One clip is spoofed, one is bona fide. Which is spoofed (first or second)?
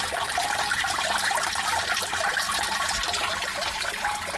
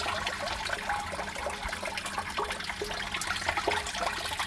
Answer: first